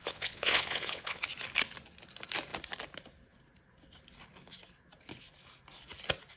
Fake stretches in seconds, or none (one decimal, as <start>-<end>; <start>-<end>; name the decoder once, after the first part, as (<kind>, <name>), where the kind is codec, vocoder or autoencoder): 0.0-1.2 (vocoder, WaveNeXt)

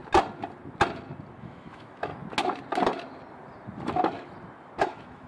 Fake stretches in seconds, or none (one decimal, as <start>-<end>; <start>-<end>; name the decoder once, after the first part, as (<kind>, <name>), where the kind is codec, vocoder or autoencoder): 1.4-2.1 (autoencoder, DAC-VAE); 4.8-5.3

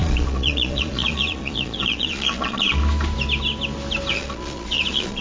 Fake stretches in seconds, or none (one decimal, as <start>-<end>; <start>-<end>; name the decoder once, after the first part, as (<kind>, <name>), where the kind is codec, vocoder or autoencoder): 0.0-2.8 (vocoder, Vocos); 4.1-5.2

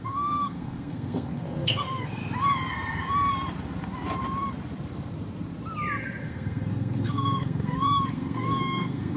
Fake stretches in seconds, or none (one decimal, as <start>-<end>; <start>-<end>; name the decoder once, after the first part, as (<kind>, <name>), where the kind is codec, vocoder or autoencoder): 0.0-2.2 (codec, SNAC); 6.2-9.2

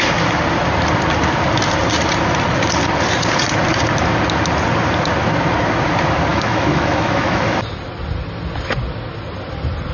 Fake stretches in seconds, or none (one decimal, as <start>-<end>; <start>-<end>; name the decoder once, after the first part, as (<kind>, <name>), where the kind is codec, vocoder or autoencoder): 6.3-7.6 (autoencoder, DAC-VAE)

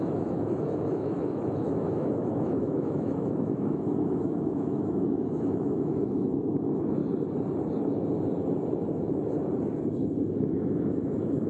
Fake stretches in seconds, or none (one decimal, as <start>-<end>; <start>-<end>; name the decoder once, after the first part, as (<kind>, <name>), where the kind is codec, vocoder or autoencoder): 0.0-7.0 (autoencoder, DAC-VAE); 10.3-11.5

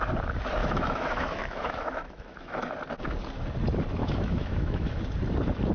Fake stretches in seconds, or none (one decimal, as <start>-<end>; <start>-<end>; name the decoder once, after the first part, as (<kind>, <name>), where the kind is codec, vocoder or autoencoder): 0.6-2.7 (autoencoder, DAC-VAE); 4.0-5.0